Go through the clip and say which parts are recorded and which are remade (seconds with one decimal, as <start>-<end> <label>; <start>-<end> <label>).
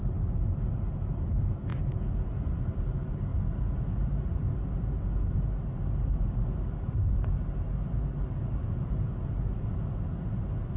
0.0-10.8 recorded